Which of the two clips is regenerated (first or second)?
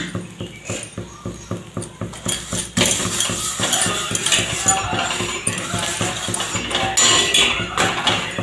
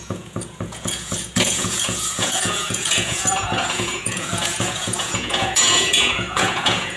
second